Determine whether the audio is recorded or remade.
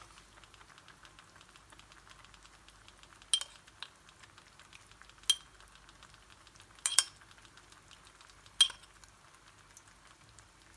recorded